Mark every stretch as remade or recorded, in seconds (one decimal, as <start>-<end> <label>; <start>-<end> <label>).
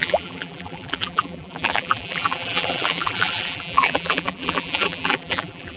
0.0-5.8 remade